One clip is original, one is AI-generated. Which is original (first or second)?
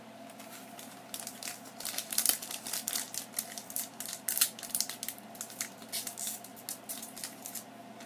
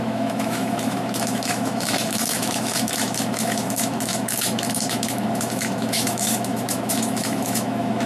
first